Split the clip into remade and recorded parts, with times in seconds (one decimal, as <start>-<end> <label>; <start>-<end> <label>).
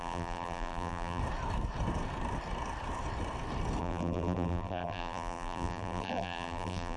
0.0-1.2 remade; 1.2-3.8 recorded; 3.8-7.0 remade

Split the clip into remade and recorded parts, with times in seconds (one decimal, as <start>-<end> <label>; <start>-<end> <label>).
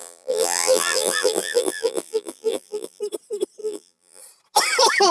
0.0-3.0 remade; 3.0-3.6 recorded; 3.6-4.2 remade; 4.2-5.1 recorded